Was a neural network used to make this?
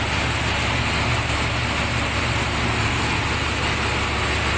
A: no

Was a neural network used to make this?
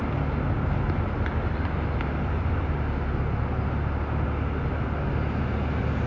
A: no